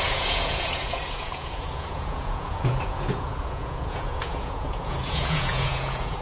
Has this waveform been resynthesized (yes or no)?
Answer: yes